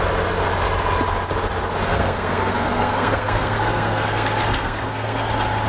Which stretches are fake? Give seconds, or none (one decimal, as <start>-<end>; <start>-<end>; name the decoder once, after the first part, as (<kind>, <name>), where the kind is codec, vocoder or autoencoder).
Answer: 1.9-5.3 (codec, SNAC)